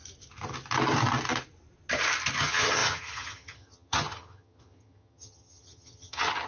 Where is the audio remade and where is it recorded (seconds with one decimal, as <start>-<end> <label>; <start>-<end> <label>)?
0.0-2.4 recorded; 2.4-6.5 remade